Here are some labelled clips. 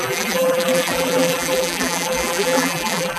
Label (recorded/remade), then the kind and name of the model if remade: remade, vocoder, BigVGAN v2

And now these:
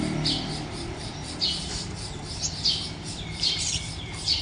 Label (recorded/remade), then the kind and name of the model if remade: remade, vocoder, BigVGAN v2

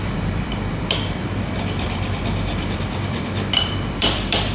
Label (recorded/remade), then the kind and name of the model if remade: remade, vocoder, BigVGAN v2